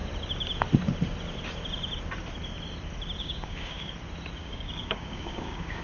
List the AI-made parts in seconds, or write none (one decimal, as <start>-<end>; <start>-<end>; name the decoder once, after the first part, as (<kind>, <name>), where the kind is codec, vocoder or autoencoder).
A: 3.2-3.9 (codec, DAC); 4.4-5.8